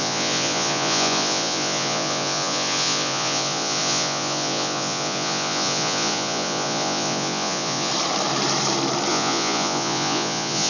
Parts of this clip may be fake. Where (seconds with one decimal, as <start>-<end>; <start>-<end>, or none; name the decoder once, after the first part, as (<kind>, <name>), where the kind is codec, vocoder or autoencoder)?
0.0-7.9 (vocoder, Vocos); 9.1-10.7